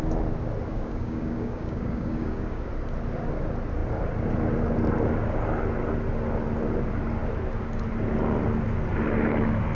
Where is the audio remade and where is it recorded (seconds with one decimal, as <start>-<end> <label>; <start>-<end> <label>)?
0.0-0.7 recorded; 0.7-2.7 remade; 2.7-9.7 recorded